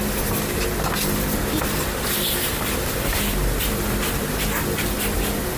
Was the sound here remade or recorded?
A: recorded